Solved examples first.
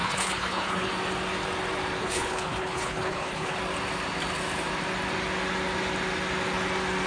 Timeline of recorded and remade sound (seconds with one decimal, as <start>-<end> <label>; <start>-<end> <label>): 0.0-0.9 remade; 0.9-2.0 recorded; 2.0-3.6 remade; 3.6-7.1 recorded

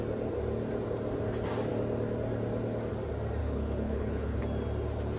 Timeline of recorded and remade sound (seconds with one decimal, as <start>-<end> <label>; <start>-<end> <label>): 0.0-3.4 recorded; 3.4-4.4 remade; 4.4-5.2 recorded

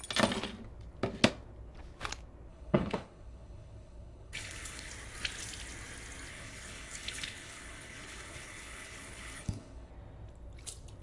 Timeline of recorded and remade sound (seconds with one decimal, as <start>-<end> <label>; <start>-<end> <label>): 0.0-2.5 recorded; 2.5-4.9 remade; 4.9-6.3 recorded; 6.3-9.9 remade; 9.9-11.0 recorded

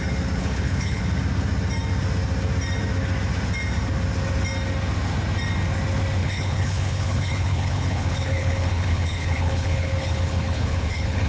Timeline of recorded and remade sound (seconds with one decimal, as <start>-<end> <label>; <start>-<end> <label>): 0.0-0.4 recorded; 0.4-1.0 remade; 1.0-6.2 recorded; 6.2-11.3 remade

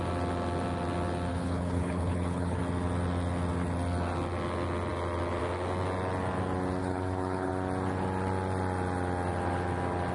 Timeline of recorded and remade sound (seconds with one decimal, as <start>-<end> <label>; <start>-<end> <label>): 0.0-1.3 recorded; 1.3-2.6 remade; 2.6-6.8 recorded; 6.8-7.5 remade; 7.5-10.1 recorded

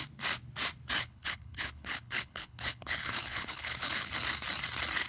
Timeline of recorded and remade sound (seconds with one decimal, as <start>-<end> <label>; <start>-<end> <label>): 0.0-1.0 recorded; 1.0-4.1 remade; 4.1-5.1 recorded

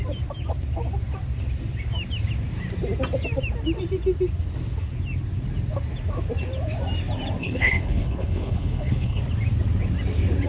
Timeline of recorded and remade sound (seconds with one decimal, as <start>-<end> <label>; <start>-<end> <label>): 0.0-7.4 recorded; 7.4-9.2 remade; 9.2-10.5 recorded